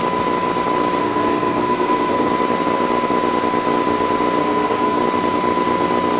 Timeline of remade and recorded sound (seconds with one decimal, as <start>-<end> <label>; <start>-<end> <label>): 0.0-1.0 recorded; 1.0-2.3 remade; 2.3-4.4 recorded; 4.4-5.0 remade; 5.0-6.2 recorded